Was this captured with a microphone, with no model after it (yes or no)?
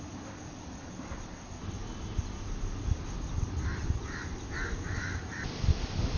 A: yes